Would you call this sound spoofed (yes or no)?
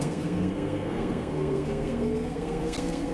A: yes